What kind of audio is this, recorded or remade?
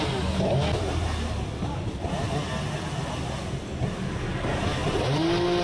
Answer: recorded